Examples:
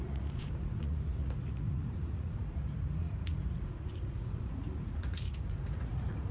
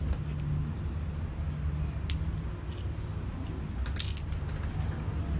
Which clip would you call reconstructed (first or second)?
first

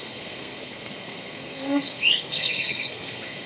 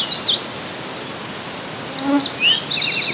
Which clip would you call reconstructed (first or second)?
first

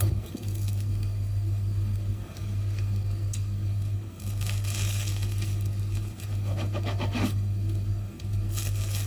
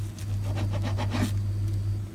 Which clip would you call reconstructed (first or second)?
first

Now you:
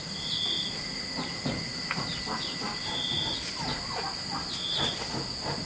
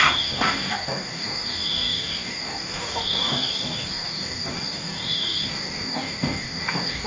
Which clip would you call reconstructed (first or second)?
second